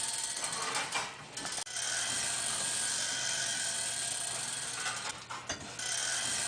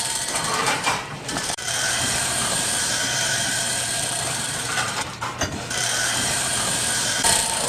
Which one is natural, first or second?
first